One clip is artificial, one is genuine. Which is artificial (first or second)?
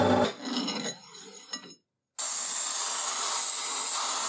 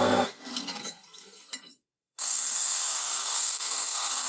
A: second